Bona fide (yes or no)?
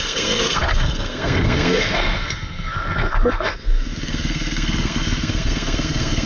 no